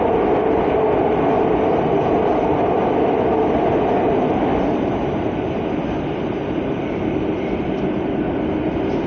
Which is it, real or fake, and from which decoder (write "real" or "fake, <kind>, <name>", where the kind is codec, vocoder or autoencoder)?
real